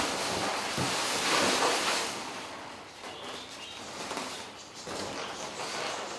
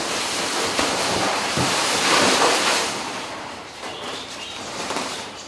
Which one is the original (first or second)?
first